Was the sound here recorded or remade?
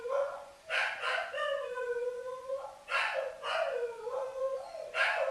remade